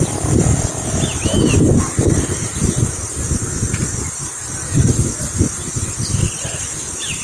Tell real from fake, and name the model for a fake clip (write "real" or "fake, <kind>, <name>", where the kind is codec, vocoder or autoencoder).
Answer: real